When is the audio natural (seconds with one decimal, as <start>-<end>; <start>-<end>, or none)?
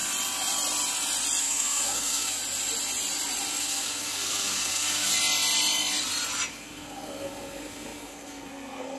0.0-1.4; 2.4-3.6; 5.1-6.5